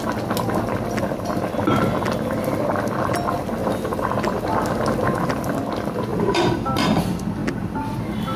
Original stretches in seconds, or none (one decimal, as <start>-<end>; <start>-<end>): 0.0-3.6; 4.4-6.1; 7.0-8.4